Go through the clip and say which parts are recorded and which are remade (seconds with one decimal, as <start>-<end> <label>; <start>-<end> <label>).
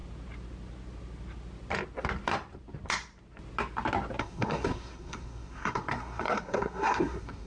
0.0-4.2 recorded; 4.2-7.5 remade